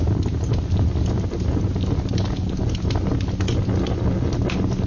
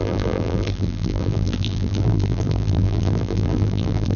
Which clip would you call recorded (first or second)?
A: first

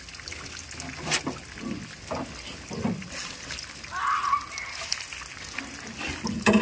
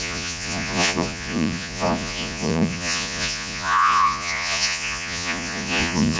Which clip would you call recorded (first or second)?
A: first